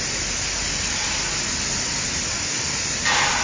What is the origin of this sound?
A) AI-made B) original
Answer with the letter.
B